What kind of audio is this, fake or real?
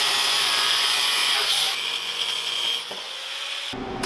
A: fake